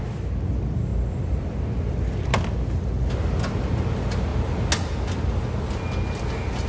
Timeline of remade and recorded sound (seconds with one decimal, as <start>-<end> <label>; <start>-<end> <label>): 0.0-6.7 recorded